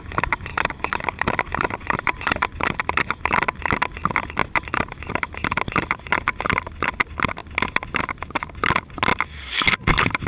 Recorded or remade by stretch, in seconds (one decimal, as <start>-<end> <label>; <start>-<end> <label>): 0.0-0.5 recorded; 0.5-2.8 remade; 2.8-10.3 recorded